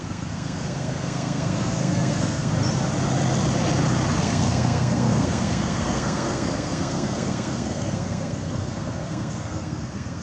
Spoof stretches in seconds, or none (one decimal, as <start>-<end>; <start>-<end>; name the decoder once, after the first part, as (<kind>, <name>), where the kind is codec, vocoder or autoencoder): 0.0-2.5 (codec, SNAC); 4.2-10.2